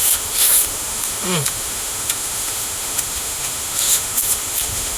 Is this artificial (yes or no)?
yes